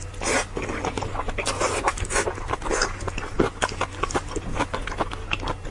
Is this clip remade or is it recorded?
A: recorded